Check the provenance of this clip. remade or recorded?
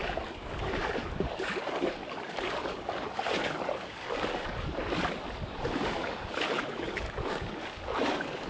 remade